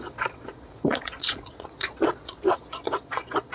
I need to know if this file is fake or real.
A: fake